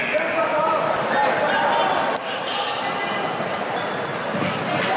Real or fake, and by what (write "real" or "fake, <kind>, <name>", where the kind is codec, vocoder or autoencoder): real